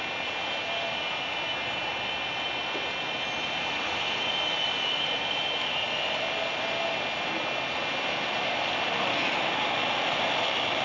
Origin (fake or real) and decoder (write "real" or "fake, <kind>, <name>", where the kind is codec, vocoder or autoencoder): real